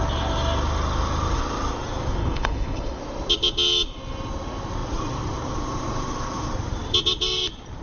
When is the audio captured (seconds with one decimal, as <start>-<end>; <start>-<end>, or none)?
0.0-2.2; 3.0-7.8